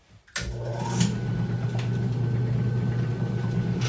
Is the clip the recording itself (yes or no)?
yes